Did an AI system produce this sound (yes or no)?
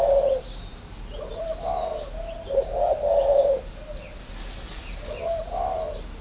no